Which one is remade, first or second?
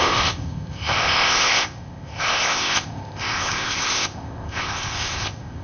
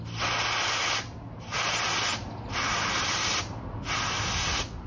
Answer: first